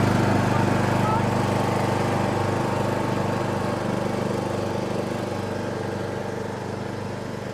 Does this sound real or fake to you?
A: real